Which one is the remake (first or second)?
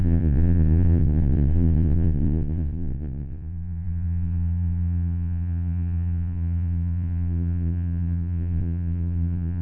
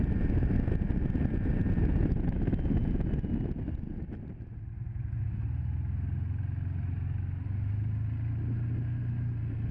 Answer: first